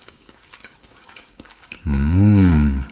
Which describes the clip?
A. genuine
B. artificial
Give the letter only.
B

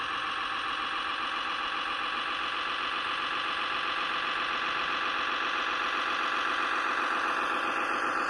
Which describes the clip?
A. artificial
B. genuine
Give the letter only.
B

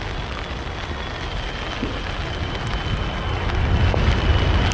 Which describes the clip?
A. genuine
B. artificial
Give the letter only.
A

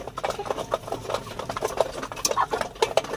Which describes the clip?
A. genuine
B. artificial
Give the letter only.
A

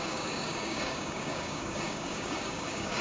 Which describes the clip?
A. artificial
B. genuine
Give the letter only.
A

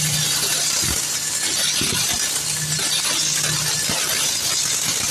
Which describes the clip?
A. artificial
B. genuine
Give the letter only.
B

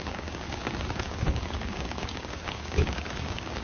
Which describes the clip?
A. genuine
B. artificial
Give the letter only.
B